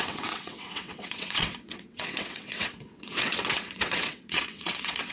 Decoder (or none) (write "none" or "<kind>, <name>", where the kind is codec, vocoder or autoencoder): vocoder, WaveNeXt